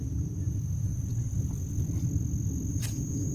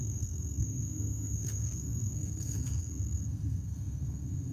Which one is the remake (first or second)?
second